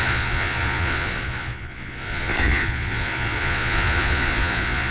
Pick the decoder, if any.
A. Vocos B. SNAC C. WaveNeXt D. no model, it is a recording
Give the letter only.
A